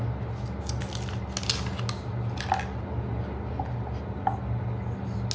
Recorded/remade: recorded